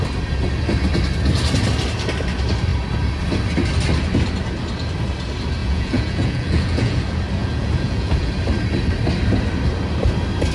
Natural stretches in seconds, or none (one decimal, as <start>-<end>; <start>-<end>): 0.0-5.6; 7.0-7.4; 8.3-10.5